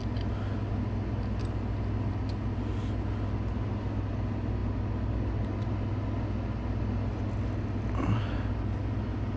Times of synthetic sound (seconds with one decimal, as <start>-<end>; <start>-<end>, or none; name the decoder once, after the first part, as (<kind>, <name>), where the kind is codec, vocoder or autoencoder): none